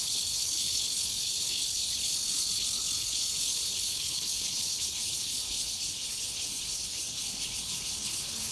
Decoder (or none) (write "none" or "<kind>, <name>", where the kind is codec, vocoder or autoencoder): codec, HILCodec